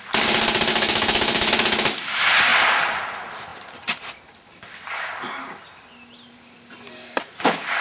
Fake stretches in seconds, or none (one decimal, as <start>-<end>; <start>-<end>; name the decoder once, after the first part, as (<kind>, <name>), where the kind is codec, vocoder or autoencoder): 0.7-1.5 (autoencoder, DAC-VAE)